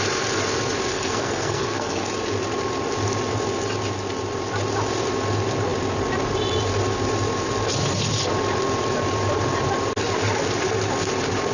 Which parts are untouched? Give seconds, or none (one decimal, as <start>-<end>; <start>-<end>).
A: 0.0-0.9; 2.1-11.5